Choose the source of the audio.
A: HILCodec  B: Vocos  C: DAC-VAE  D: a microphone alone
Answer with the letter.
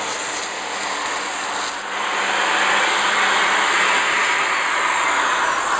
D